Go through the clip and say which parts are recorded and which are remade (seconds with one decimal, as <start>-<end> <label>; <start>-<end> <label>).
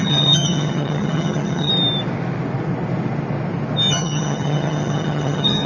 0.0-1.7 remade; 1.7-3.9 recorded; 3.9-5.7 remade